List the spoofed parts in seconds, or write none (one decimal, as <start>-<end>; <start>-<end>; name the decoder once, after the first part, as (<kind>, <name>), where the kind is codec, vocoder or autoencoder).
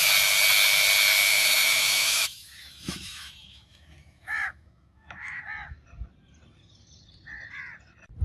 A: 1.3-5.4 (autoencoder, DAC-VAE)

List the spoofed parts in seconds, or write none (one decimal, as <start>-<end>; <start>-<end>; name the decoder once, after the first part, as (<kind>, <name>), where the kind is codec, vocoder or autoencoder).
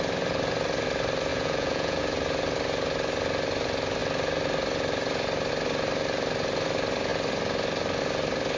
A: 1.3-2.0 (vocoder, Vocos)